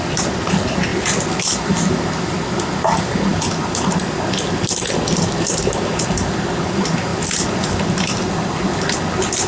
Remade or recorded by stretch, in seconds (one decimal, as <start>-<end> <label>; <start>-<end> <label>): 0.0-7.1 recorded; 7.1-7.7 remade; 7.7-9.5 recorded